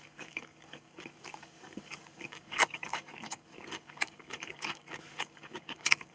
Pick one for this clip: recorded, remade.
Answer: remade